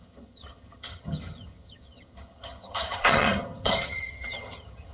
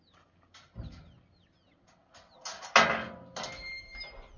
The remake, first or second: first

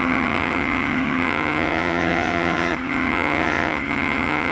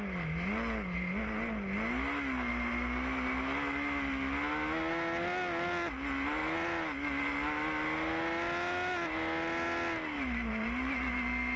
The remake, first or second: first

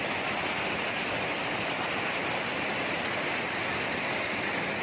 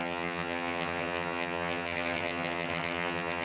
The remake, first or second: second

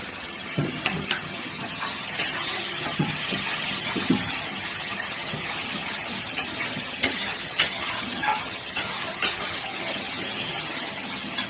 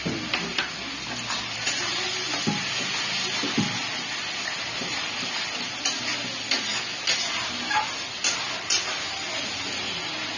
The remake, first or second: first